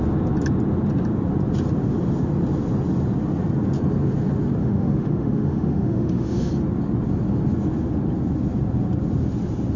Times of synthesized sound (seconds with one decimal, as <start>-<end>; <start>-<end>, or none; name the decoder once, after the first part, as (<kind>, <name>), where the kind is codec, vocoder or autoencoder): 4.6-6.5 (autoencoder, DAC-VAE)